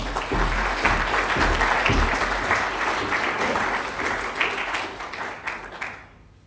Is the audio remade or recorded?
recorded